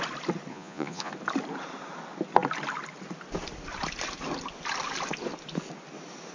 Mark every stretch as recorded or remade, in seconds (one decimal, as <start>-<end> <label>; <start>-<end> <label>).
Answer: 0.0-0.5 recorded; 0.5-1.1 remade; 1.1-6.3 recorded